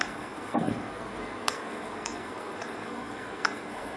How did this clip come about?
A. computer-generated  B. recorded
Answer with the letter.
A